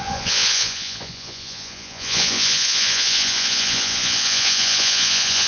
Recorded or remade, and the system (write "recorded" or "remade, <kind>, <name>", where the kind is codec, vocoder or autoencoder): remade, vocoder, Vocos